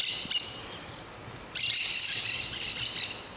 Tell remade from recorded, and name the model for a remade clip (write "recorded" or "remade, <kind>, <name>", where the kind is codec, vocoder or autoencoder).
remade, vocoder, BigVGAN v2